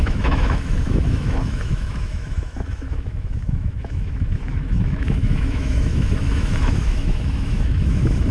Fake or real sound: fake